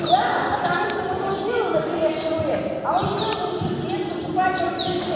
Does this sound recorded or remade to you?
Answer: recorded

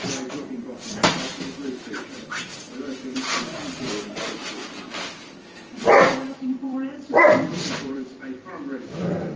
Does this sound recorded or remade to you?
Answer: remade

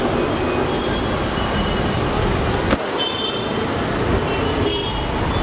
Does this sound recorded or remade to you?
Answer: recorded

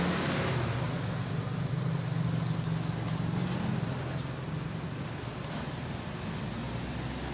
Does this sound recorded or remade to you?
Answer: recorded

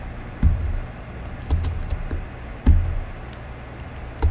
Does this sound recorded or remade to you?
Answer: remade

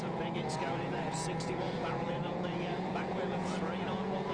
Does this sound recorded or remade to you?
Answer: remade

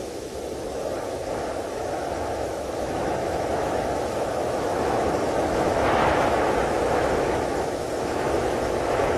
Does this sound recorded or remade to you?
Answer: remade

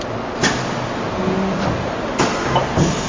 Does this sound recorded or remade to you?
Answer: recorded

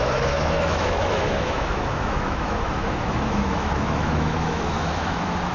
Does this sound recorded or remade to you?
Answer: remade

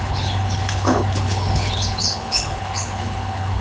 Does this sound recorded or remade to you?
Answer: remade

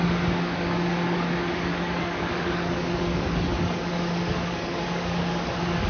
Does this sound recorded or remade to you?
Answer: remade